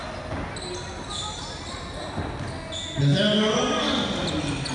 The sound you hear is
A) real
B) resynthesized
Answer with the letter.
A